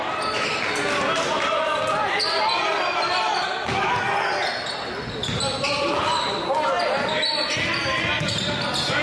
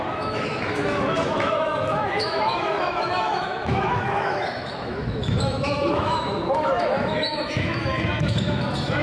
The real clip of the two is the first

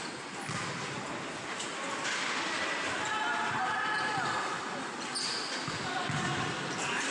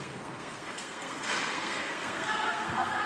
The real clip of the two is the first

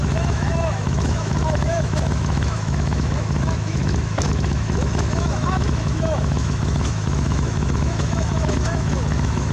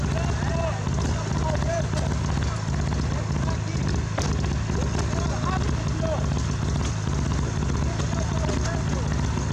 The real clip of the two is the second